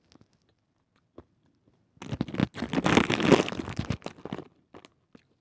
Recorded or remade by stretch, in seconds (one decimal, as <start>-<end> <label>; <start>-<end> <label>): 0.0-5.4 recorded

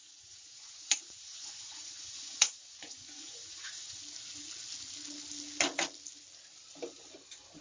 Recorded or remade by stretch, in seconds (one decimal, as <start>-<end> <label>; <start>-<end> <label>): 0.0-4.0 remade; 4.0-7.6 recorded

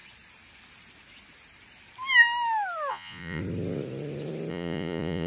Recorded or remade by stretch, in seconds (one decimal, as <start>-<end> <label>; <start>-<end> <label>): 0.0-2.9 recorded; 2.9-3.4 remade; 3.4-4.5 recorded; 4.5-5.3 remade